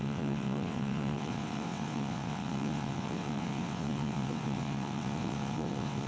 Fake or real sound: fake